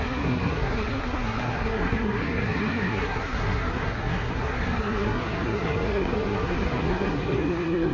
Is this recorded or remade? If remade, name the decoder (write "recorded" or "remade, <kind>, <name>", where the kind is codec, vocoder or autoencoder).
remade, codec, SNAC